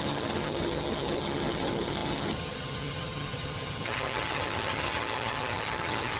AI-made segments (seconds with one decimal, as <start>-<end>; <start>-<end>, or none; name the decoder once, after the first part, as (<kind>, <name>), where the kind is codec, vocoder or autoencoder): 0.0-6.2 (vocoder, HiFi-GAN)